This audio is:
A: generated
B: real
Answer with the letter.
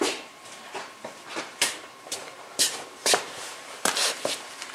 A